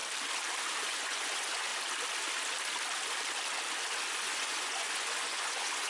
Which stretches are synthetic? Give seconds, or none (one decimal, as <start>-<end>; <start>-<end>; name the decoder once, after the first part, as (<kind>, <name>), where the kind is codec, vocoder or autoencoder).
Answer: 0.7-1.7 (vocoder, Vocos); 4.1-5.9